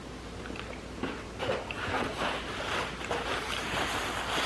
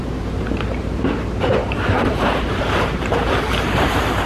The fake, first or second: second